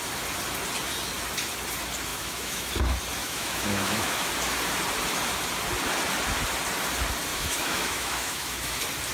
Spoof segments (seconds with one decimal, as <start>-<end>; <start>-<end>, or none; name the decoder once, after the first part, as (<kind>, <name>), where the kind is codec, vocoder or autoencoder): 2.1-2.7 (autoencoder, DAC-VAE); 3.2-4.3; 7.3-8.7